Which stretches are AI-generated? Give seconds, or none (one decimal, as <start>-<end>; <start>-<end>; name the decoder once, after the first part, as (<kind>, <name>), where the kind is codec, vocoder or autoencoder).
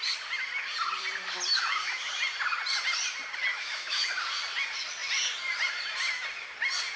1.5-2.1 (autoencoder, DAC-VAE); 3.5-4.1